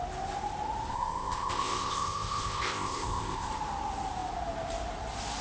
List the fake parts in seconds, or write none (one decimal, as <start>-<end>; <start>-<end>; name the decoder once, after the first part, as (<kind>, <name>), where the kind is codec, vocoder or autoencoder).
0.9-3.5 (codec, ZipCodec)